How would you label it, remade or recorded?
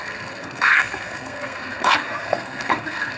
remade